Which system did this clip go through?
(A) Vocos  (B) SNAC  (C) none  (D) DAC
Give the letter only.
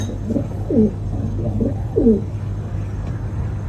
D